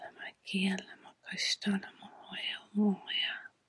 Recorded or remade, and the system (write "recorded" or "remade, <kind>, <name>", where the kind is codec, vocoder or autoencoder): recorded